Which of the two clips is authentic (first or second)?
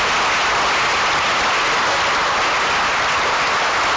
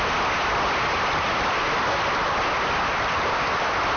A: first